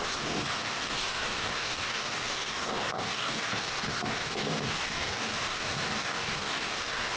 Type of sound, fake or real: fake